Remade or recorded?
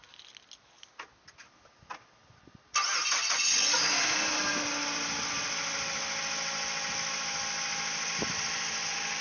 recorded